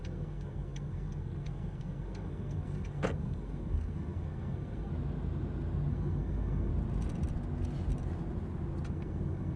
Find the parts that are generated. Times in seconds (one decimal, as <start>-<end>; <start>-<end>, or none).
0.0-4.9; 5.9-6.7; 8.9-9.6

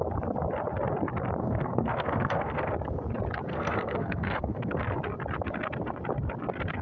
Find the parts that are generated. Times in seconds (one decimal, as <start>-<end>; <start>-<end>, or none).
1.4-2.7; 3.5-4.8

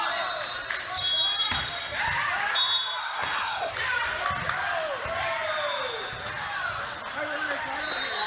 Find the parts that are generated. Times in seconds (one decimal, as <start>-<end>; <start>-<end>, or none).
3.0-3.7

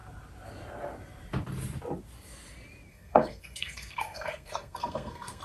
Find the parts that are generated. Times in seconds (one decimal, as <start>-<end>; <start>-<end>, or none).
2.9-5.4

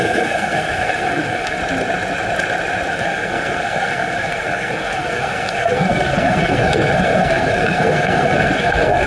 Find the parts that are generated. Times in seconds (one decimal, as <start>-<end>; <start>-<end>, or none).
0.0-1.6; 2.9-9.1

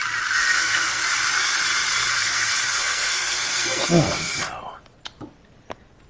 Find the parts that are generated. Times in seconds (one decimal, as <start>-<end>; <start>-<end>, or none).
0.4-1.0; 2.1-4.4

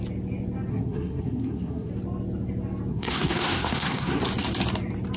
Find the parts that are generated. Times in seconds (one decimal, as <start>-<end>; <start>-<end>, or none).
0.7-1.9; 2.9-4.2